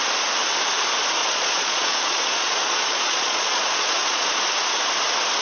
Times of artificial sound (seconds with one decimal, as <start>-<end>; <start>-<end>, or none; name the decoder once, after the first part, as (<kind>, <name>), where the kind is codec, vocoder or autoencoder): 1.2-4.4 (vocoder, Vocos)